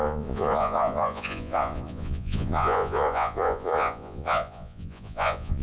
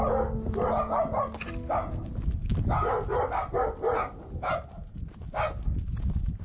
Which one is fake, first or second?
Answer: first